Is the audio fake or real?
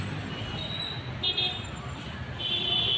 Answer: real